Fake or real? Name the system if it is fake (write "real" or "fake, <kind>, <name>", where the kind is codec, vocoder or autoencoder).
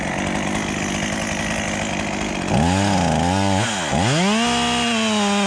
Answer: real